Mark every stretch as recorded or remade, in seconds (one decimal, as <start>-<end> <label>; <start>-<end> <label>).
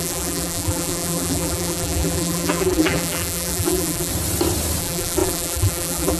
0.0-4.1 remade; 4.1-4.8 recorded; 4.8-6.2 remade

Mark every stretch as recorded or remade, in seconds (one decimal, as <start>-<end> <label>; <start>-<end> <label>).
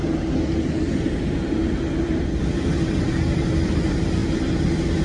0.0-5.0 recorded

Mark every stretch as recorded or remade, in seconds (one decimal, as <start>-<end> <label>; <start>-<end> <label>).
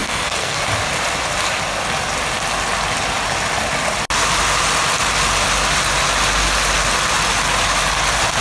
0.0-0.6 remade; 0.6-8.4 recorded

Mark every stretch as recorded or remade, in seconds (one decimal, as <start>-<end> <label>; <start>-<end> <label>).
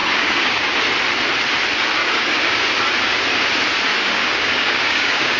0.0-0.8 remade; 0.8-2.0 recorded; 2.0-2.6 remade; 2.6-3.9 recorded; 3.9-5.4 remade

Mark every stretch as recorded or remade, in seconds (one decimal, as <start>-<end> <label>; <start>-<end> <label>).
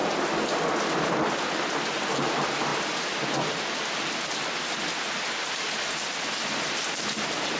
0.0-7.6 recorded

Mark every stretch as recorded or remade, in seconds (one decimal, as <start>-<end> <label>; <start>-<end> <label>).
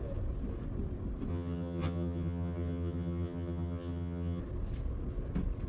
0.0-1.3 recorded; 1.3-4.4 remade; 4.4-5.7 recorded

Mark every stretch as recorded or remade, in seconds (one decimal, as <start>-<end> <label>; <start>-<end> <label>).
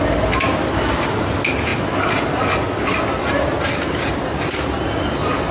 0.0-5.5 recorded